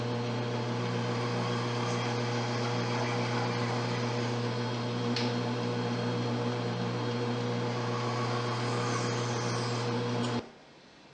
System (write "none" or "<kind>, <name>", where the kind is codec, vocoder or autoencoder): none